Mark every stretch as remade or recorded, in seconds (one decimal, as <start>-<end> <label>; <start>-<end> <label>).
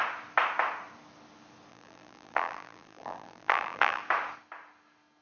0.0-1.7 recorded; 1.7-4.0 remade; 4.0-5.2 recorded